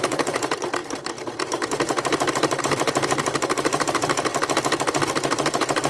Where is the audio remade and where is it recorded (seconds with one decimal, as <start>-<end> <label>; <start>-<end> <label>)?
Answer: 0.0-4.3 remade; 4.3-5.1 recorded; 5.1-5.9 remade